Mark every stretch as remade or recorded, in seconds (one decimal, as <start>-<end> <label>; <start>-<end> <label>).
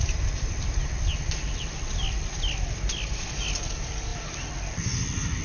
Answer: 0.0-5.4 recorded